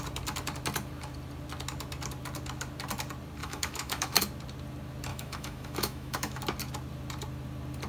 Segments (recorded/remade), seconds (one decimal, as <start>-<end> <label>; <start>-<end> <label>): 0.0-3.4 recorded; 3.4-4.2 remade; 4.2-5.1 recorded; 5.1-6.4 remade; 6.4-7.9 recorded